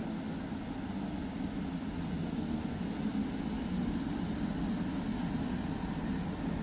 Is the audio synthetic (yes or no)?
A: no